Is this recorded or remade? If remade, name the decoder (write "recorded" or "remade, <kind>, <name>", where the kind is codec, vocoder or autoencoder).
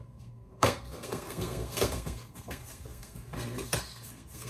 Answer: remade, codec, SNAC